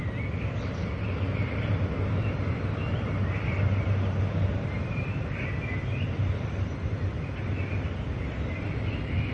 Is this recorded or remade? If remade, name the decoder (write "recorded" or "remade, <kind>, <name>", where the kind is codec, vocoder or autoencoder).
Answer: recorded